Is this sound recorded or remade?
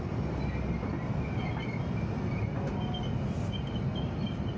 recorded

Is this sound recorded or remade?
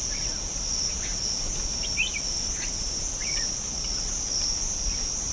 remade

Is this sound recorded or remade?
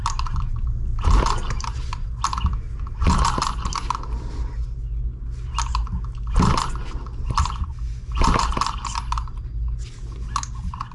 recorded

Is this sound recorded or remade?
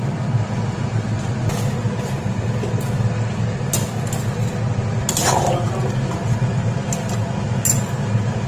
recorded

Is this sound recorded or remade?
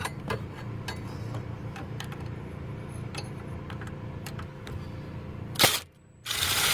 remade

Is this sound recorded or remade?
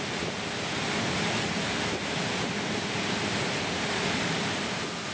recorded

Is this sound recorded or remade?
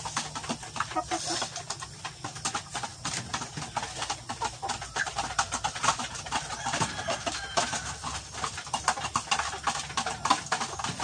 recorded